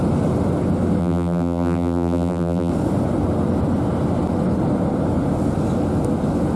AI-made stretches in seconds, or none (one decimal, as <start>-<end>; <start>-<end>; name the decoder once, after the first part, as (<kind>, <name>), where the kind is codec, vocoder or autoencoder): 1.0-2.7 (vocoder, BigVGAN v2)